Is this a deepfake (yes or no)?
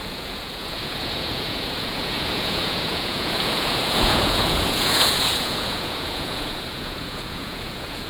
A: yes